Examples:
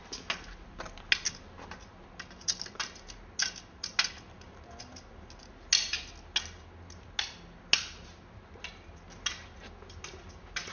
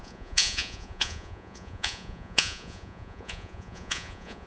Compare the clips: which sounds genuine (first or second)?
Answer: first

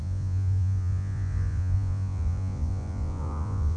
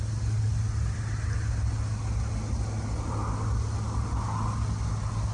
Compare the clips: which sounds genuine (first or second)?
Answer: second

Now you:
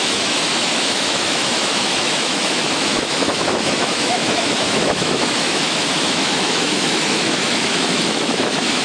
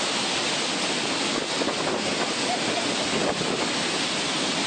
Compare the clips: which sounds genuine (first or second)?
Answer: second